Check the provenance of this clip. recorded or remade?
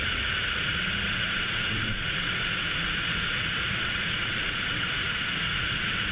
remade